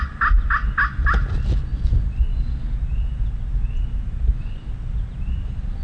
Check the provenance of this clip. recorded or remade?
recorded